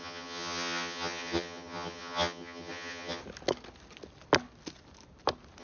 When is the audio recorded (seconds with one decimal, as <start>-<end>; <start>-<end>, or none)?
3.2-5.6